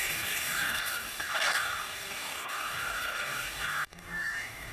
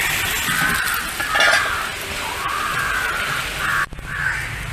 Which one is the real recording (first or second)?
second